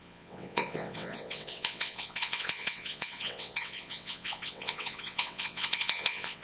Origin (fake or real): fake